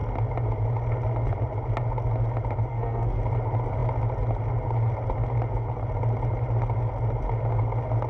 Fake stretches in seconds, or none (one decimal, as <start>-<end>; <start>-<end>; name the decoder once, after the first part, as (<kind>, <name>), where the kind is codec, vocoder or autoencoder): 2.7-3.2 (codec, SNAC)